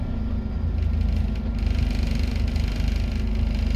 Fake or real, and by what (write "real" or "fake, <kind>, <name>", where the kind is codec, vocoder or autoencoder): real